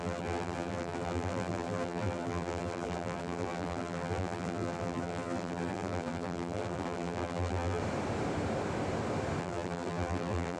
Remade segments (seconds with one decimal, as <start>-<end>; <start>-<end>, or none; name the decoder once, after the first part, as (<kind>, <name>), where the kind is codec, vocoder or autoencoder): 0.0-7.8 (vocoder, BigVGAN v2); 9.4-10.6